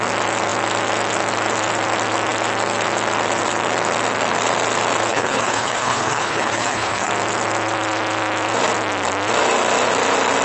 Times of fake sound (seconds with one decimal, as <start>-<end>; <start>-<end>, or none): 5.1-7.1